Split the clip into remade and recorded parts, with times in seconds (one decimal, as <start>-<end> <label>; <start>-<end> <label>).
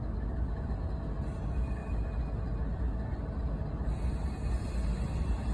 0.0-5.5 recorded